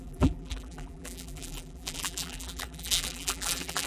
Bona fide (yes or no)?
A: no